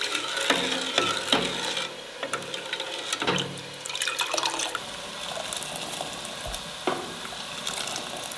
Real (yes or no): yes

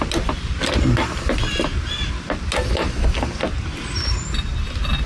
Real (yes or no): yes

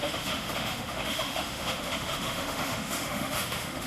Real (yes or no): no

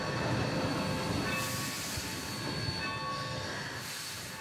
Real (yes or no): yes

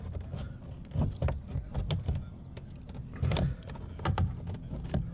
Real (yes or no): yes